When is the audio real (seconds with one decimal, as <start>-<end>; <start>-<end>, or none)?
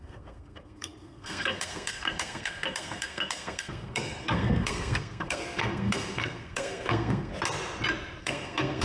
7.3-8.2